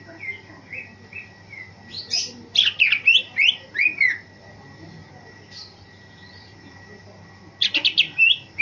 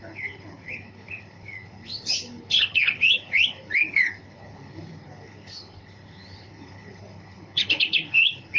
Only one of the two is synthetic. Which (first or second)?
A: second